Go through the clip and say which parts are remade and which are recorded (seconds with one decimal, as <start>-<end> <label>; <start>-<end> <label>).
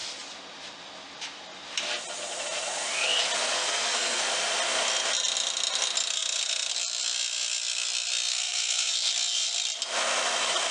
0.0-3.5 recorded; 3.5-4.2 remade; 4.2-8.3 recorded; 8.3-8.9 remade; 8.9-10.7 recorded